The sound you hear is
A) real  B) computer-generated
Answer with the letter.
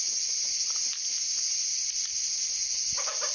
A